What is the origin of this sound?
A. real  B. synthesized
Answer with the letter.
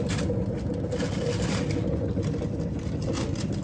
A